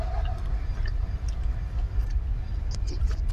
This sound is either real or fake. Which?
real